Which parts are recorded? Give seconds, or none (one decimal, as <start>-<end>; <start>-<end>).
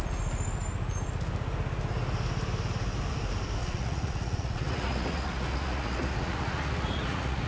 0.0-3.6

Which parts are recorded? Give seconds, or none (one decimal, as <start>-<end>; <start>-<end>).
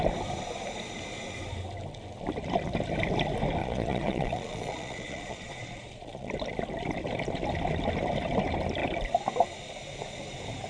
0.0-3.6; 6.3-10.7